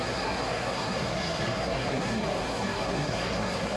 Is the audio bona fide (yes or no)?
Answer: no